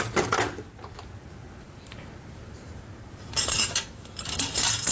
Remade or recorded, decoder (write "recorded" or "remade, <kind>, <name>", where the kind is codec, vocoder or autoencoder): remade, vocoder, BigVGAN v2